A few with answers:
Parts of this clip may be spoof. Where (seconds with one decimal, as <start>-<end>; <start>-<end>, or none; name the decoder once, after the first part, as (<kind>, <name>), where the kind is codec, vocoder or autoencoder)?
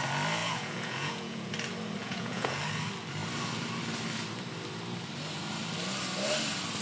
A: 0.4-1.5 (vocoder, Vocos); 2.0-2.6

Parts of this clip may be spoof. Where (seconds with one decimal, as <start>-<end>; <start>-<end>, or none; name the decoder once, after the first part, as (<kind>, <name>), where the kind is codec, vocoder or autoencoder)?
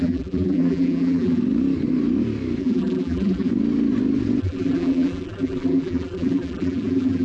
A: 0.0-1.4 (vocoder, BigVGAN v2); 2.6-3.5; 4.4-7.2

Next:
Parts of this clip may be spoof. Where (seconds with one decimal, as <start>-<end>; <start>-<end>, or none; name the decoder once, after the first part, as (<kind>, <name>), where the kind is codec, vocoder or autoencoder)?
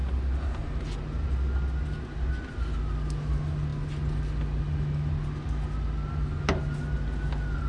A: none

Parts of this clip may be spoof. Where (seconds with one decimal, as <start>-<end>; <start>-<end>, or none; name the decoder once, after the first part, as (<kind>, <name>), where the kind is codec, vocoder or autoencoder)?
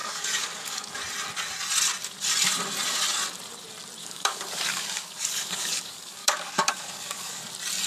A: 0.0-0.9 (codec, DAC); 4.0-7.4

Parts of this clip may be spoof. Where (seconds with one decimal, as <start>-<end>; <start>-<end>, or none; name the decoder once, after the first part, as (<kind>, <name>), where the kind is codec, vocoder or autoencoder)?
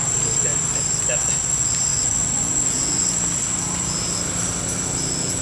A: none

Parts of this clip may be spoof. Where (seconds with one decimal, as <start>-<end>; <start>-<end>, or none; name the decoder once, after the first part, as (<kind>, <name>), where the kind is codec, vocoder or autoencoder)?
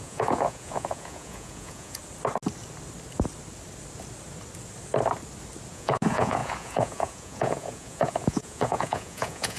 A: 0.0-2.0 (vocoder, Vocos); 5.7-9.6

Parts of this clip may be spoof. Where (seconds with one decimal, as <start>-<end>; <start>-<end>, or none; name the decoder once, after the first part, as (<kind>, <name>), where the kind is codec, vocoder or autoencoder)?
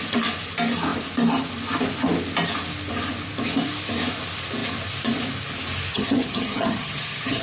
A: 5.9-7.4 (vocoder, HiFi-GAN)